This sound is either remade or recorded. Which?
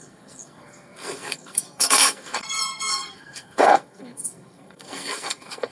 remade